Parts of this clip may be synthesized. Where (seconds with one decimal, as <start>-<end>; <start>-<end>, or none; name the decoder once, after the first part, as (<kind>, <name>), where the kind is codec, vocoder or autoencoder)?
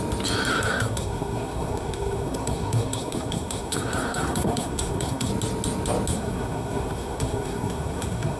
0.5-5.3 (codec, SNAC); 6.1-8.4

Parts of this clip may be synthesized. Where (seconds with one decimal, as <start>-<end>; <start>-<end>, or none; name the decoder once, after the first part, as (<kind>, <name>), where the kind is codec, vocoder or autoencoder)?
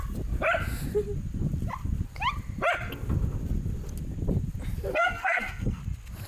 4.9-5.8 (codec, SNAC)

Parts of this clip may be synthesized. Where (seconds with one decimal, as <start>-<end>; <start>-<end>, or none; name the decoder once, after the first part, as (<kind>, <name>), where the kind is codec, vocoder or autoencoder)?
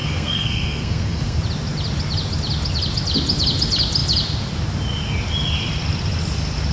0.0-1.4 (codec, SNAC)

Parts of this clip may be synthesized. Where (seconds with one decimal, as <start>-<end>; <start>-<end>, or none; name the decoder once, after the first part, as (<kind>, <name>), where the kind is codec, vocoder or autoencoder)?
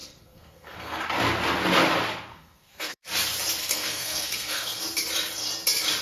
0.0-1.0 (codec, SNAC); 2.3-3.0; 3.6-4.8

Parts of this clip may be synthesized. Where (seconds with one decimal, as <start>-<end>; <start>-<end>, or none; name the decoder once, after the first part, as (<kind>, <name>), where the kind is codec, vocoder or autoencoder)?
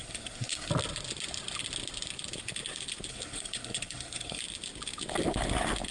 0.0-0.7 (codec, SNAC); 3.1-4.4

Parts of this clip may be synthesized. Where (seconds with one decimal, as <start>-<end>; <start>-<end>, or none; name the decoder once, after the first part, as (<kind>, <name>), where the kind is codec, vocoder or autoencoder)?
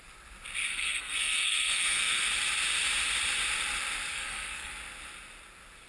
0.7-2.3 (codec, SNAC); 4.1-4.7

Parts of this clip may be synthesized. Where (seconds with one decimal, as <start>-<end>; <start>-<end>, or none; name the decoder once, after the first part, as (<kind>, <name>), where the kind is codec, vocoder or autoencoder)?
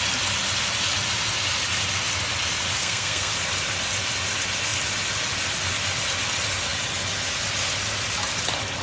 2.8-3.3 (codec, SNAC)